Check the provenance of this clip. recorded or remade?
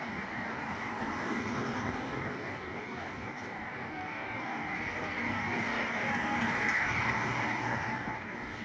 remade